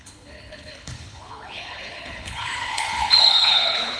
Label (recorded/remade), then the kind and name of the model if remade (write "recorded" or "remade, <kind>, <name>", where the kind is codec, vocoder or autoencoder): remade, codec, HILCodec